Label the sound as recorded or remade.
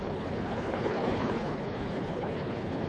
remade